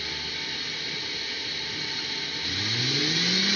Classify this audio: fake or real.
real